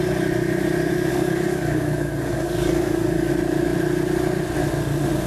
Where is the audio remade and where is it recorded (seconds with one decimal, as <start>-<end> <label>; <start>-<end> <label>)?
0.0-1.1 recorded; 1.1-3.3 remade; 3.3-5.3 recorded